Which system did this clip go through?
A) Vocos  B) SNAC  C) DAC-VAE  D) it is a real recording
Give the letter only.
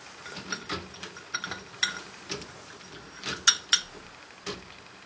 D